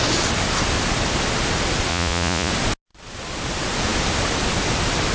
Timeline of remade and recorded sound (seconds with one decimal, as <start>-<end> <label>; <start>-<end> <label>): 0.0-1.9 recorded; 1.9-2.5 remade; 2.5-5.1 recorded